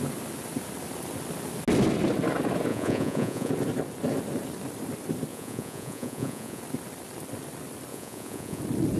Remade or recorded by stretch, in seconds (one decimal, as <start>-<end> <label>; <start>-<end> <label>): 0.0-2.7 recorded; 2.7-3.5 remade; 3.5-5.3 recorded; 5.3-6.6 remade; 6.6-7.9 recorded; 7.9-8.6 remade; 8.6-9.0 recorded